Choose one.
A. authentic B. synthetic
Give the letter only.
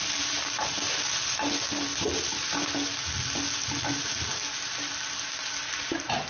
A